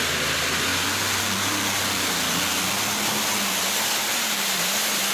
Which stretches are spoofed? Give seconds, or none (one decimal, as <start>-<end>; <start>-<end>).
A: 4.0-4.6